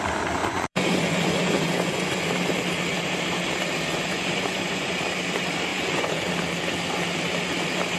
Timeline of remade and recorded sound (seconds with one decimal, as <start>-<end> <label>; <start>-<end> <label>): 0.0-0.4 recorded; 0.4-2.3 remade; 2.3-3.9 recorded; 3.9-4.9 remade; 4.9-5.7 recorded; 5.7-6.3 remade; 6.3-8.0 recorded